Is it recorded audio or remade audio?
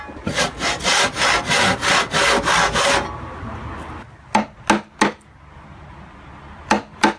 recorded